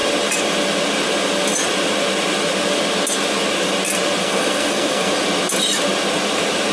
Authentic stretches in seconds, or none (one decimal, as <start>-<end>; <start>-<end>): 0.0-4.2; 5.1-6.7